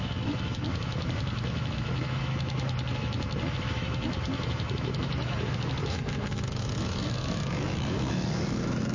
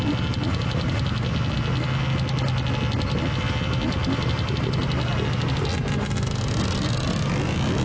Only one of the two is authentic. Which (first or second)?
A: second